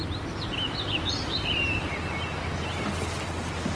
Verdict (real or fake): real